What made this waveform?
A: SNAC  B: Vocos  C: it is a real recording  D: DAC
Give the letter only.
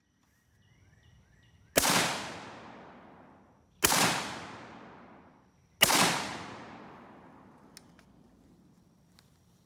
C